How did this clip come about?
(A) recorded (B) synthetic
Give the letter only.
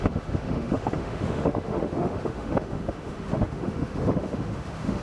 B